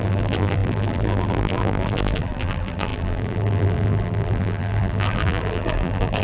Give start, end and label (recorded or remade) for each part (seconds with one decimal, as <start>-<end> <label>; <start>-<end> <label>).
0.0-6.2 remade